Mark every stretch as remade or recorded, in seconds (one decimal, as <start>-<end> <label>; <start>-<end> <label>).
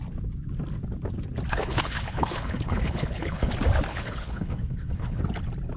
0.0-1.5 recorded; 1.5-3.5 remade; 3.5-3.9 recorded; 3.9-5.2 remade; 5.2-5.8 recorded